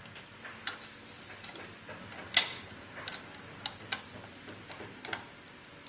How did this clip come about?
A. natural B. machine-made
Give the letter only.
A